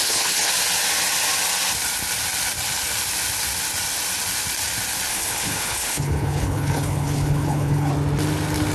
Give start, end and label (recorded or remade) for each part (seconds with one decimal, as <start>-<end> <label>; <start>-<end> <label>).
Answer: 0.0-0.5 remade; 0.5-5.1 recorded; 5.1-7.9 remade; 7.9-8.7 recorded